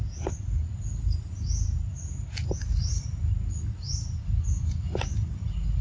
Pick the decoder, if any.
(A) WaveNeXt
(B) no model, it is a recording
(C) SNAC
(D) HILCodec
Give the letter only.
B